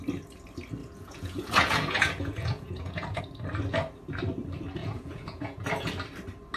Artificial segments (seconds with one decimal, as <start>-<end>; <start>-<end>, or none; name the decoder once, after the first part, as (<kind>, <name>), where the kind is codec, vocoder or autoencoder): 0.8-3.2 (vocoder, Vocos); 4.8-5.9